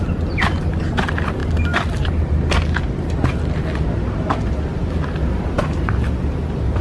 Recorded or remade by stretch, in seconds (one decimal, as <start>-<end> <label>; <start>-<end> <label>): 0.0-6.8 recorded